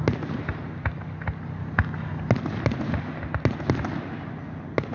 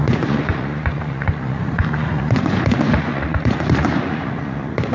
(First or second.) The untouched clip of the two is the first